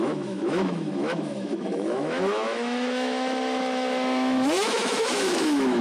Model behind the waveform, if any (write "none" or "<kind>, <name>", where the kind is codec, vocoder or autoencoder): autoencoder, DAC-VAE